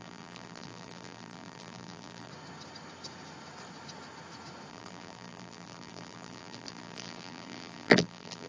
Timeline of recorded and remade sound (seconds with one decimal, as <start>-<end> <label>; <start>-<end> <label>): 0.0-2.3 remade; 2.3-4.7 recorded; 4.7-8.5 remade